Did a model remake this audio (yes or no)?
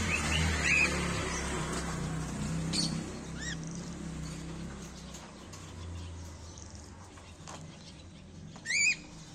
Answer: no